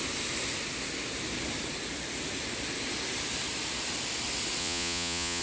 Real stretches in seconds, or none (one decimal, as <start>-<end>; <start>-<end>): 0.0-4.6